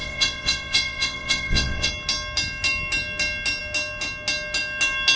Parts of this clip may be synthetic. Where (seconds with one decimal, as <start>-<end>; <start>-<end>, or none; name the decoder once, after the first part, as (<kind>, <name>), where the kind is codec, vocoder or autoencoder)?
0.0-1.9 (vocoder, WaveNeXt)